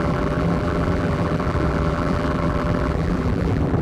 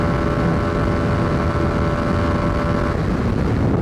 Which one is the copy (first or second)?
first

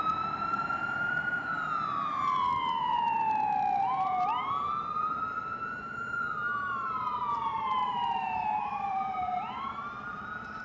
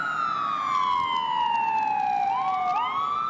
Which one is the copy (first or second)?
first